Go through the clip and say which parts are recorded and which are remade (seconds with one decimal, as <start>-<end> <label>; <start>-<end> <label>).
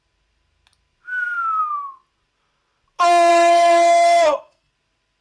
0.0-3.3 recorded; 3.3-4.7 remade; 4.7-5.2 recorded